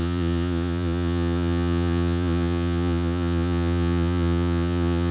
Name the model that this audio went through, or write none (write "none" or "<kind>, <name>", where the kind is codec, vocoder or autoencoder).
vocoder, Vocos